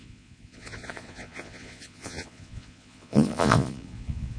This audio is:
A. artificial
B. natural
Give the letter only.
A